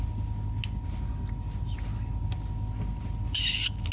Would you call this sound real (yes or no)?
yes